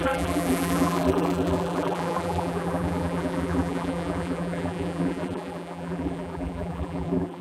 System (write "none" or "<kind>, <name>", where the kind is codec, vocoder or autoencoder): vocoder, BigVGAN v2